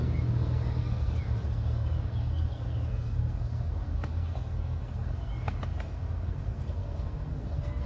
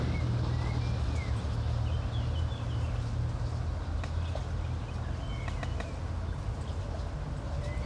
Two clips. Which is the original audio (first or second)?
second